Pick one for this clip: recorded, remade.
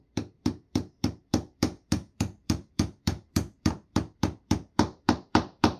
remade